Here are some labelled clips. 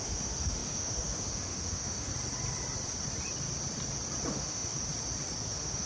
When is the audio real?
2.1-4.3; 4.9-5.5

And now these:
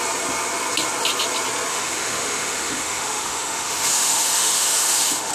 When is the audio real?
0.0-1.7

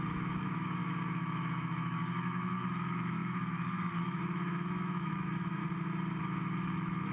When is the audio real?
5.6-6.2

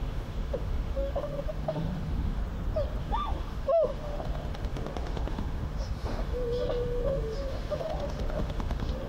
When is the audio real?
2.4-3.0

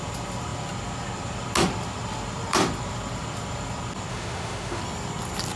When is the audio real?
0.0-4.1; 4.8-5.6

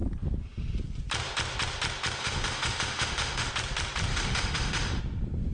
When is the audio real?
0.0-2.2; 3.5-4.1; 5.0-5.5

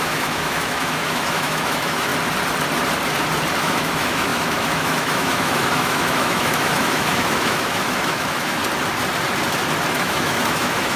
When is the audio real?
2.1-3.6; 8.6-9.9